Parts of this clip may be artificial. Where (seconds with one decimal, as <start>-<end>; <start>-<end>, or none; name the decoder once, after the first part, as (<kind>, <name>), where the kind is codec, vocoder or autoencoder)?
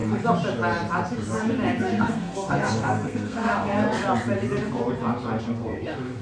1.8-3.5 (codec, SNAC); 5.4-6.2